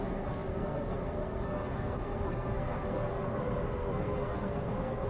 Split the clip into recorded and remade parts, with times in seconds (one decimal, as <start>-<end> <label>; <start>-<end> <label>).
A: 0.0-5.1 remade